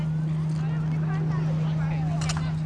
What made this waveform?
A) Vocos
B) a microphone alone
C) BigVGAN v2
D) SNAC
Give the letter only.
B